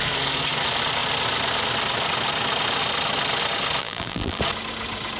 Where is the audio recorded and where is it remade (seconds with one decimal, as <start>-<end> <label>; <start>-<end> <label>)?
0.0-3.8 recorded; 3.8-4.4 remade; 4.4-5.2 recorded